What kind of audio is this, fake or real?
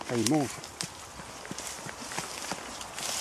real